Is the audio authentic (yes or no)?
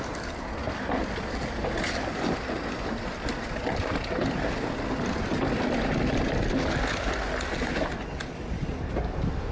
yes